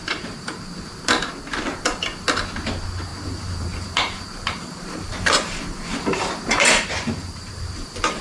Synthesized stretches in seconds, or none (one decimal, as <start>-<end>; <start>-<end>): 0.0-0.6; 3.1-8.2